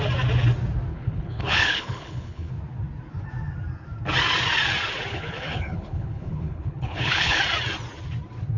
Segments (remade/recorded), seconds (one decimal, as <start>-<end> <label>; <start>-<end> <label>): 0.0-0.9 recorded; 0.9-2.5 remade; 2.5-5.1 recorded; 5.1-7.4 remade; 7.4-8.6 recorded